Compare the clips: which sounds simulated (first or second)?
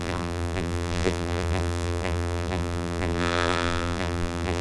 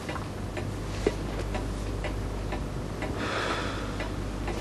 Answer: first